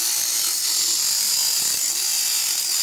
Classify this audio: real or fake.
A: real